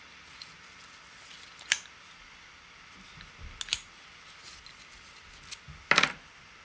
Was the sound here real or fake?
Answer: real